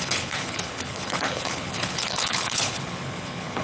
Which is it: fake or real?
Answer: fake